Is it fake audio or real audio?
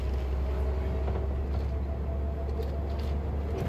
real